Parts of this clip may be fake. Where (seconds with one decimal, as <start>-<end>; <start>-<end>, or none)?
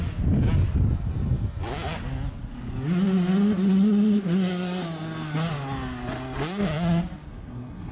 7.3-7.9